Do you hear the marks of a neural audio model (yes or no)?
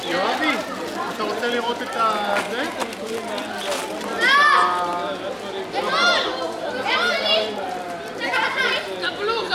no